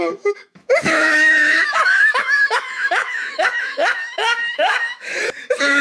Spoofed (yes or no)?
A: yes